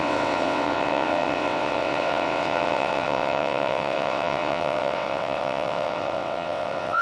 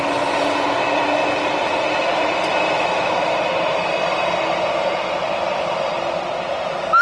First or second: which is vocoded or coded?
first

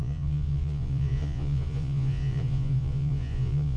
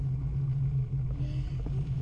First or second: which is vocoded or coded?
first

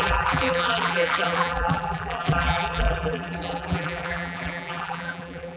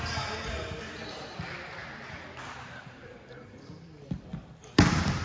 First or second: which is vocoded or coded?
first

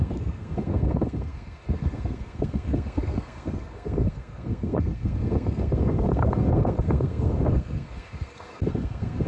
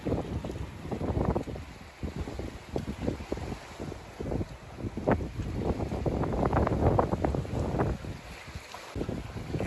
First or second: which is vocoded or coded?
first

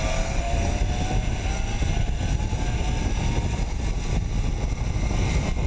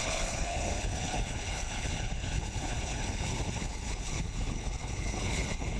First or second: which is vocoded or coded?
second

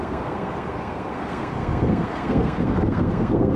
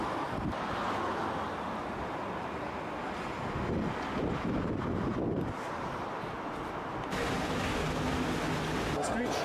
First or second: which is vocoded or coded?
first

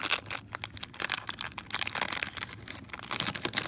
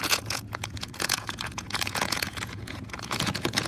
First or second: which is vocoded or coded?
second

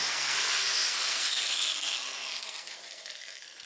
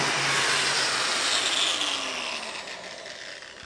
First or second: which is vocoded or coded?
first